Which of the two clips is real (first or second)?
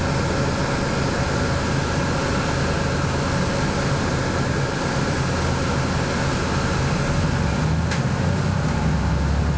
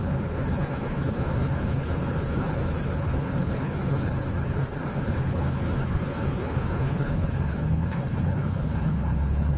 first